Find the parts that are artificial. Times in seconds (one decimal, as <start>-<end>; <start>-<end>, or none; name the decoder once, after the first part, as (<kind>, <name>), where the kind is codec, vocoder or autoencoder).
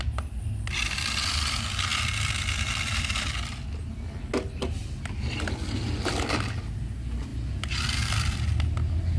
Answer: none